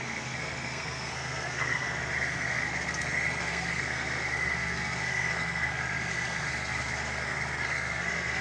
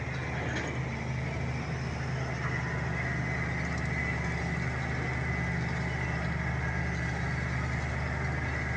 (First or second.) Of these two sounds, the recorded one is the second